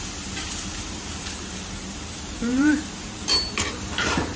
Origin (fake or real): fake